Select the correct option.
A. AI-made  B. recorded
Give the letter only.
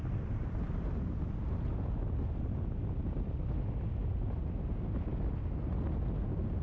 B